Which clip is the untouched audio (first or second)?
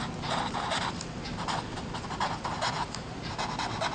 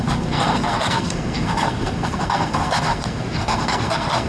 first